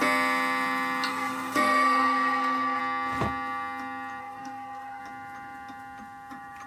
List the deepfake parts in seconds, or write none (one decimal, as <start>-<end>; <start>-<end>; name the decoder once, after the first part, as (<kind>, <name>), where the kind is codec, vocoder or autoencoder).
1.1-2.8 (codec, SNAC); 4.2-5.0